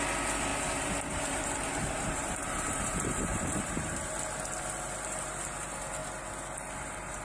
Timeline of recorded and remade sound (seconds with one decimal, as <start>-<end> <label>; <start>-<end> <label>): 0.0-0.5 recorded; 0.5-4.1 remade; 4.1-7.2 recorded